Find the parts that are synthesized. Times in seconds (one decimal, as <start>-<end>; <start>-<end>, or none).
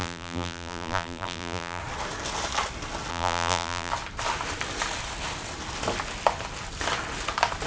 0.0-1.8; 3.1-3.9